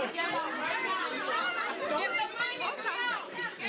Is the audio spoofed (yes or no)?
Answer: no